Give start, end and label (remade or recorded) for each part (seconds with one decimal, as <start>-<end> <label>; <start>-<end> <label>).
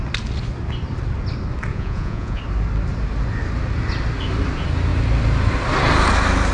0.0-1.7 recorded; 1.7-2.4 remade; 2.4-6.5 recorded